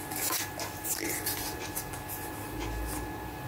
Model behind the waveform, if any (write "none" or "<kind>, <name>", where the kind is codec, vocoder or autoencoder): none